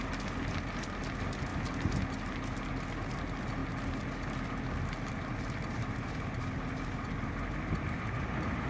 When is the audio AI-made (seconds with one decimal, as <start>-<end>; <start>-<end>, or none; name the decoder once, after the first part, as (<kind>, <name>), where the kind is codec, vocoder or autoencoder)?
none